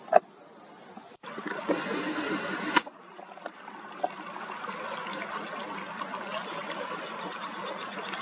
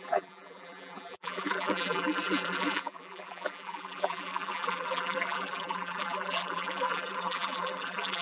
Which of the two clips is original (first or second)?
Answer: first